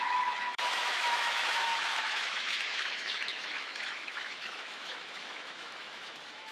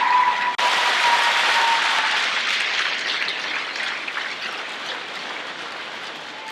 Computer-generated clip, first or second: first